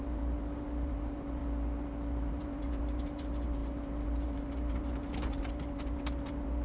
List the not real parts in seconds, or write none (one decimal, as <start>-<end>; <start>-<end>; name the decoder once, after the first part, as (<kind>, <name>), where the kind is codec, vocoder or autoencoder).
0.0-1.4 (vocoder, BigVGAN v2); 2.3-6.6